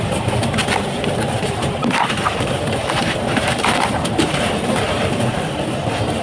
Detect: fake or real fake